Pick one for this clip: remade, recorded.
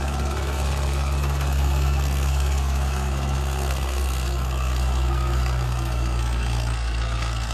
remade